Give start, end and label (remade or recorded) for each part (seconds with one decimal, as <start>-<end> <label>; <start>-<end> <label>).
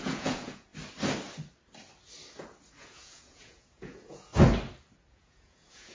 0.0-0.7 remade; 0.7-2.7 recorded; 2.7-4.3 remade; 4.3-5.1 recorded; 5.1-5.9 remade